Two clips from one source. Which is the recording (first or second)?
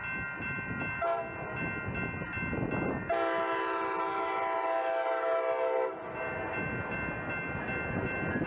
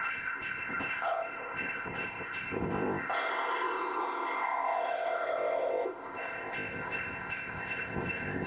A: first